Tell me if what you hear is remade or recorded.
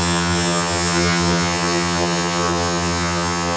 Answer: remade